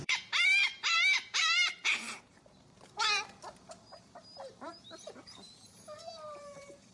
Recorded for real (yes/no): no